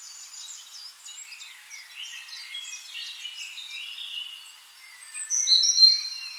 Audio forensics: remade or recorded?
recorded